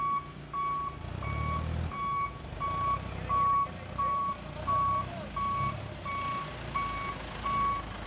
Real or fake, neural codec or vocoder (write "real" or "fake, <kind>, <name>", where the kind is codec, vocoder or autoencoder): real